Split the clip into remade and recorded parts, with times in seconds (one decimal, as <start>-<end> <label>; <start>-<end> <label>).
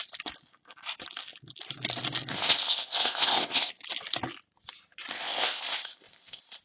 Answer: 0.0-2.3 recorded; 2.3-3.7 remade; 3.7-5.1 recorded; 5.1-6.6 remade